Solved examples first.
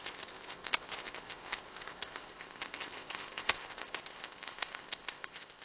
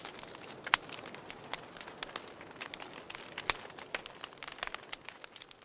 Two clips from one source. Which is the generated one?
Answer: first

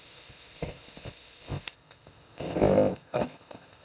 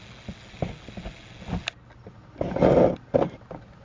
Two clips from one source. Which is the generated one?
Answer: first